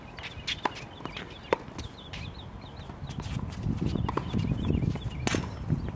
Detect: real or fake real